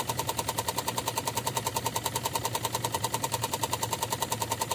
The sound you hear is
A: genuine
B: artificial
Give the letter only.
A